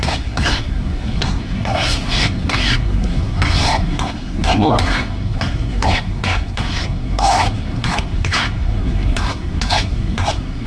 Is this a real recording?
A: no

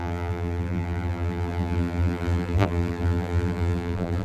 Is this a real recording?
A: no